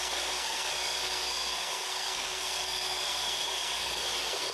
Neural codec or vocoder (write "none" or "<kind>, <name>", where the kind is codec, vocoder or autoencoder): codec, SNAC